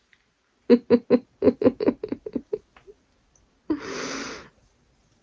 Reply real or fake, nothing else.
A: real